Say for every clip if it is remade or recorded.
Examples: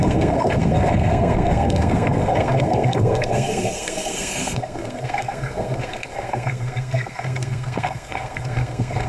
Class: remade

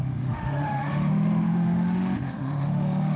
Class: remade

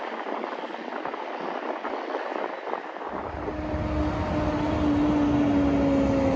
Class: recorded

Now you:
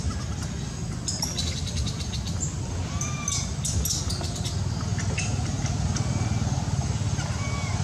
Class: recorded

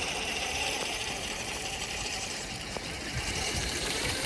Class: remade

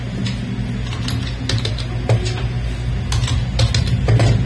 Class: recorded